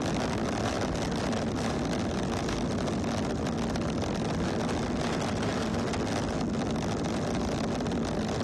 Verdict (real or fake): real